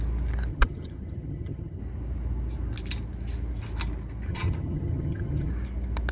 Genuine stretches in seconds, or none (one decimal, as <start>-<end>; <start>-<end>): 0.0-0.5; 1.8-4.3; 5.5-6.1